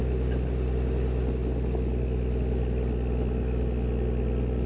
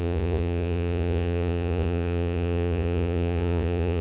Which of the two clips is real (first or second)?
first